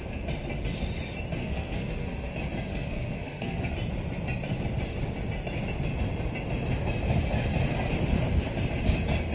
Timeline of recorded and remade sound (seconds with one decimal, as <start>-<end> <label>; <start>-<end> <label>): 0.0-1.4 recorded; 1.4-2.3 remade; 2.3-2.7 recorded; 2.7-3.7 remade; 3.7-9.3 recorded